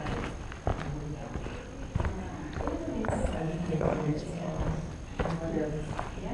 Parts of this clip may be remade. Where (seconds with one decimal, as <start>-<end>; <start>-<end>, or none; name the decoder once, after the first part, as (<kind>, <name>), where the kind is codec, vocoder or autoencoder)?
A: 3.2-4.6 (codec, SNAC)